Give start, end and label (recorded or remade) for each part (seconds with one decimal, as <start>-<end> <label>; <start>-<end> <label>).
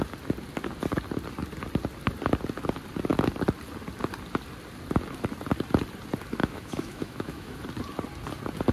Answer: 0.0-6.4 recorded; 6.4-7.6 remade; 7.6-8.7 recorded